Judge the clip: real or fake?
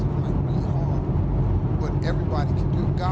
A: real